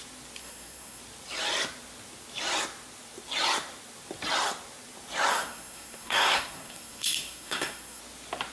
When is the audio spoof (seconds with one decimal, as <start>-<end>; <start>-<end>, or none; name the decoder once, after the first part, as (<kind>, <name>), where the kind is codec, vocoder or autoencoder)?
0.4-1.0 (codec, SNAC); 5.3-8.0